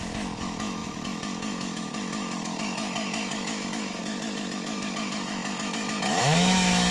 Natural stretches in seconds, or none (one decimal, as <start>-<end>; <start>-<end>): none